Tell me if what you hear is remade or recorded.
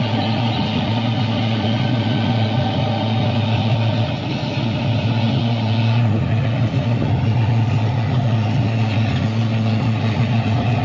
remade